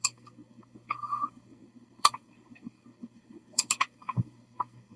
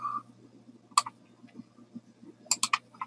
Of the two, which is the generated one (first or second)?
first